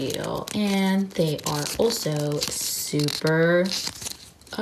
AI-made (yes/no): no